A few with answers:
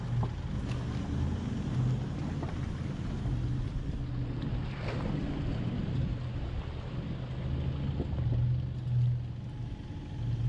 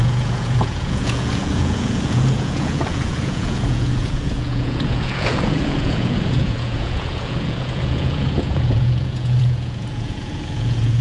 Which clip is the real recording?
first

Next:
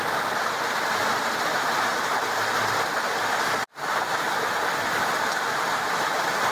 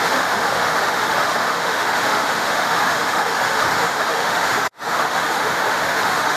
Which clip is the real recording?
first